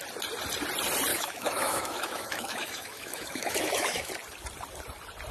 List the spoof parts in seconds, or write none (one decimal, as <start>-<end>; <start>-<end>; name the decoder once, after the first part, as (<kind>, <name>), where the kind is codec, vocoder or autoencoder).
1.1-4.1 (autoencoder, DAC-VAE)